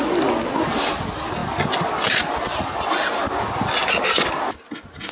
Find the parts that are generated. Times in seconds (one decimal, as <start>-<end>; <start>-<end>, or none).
none